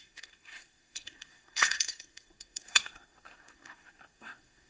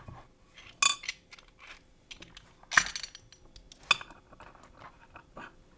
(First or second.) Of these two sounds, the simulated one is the first